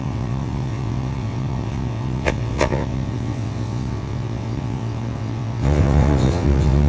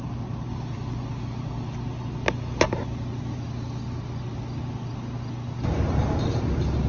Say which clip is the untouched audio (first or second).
second